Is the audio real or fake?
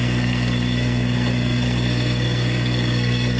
fake